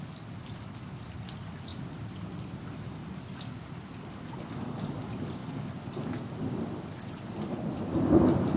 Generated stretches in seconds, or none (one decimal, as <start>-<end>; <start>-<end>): none